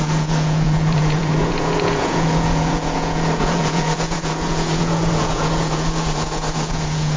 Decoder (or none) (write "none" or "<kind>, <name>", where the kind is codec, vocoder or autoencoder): vocoder, Vocos